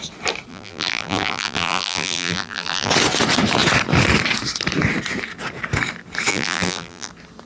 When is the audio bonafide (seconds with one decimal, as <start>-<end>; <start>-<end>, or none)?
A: 0.0-0.5; 2.9-6.3; 7.1-7.5